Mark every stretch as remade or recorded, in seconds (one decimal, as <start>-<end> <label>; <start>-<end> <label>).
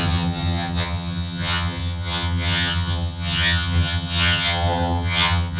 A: 0.0-5.6 remade